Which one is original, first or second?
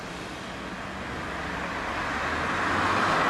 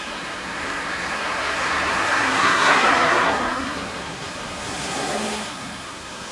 first